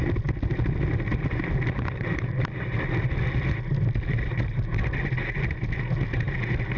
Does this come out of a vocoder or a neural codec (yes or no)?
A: no